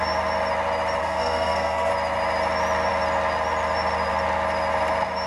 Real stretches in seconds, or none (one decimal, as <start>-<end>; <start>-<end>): 0.0-1.0; 1.9-5.3